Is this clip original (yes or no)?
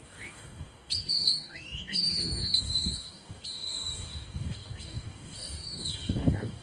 no